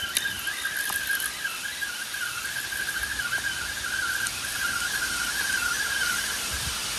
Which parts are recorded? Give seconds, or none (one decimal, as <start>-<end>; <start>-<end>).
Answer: 0.0-7.0